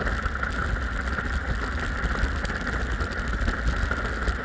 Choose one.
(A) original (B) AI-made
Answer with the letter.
A